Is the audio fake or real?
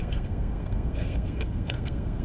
fake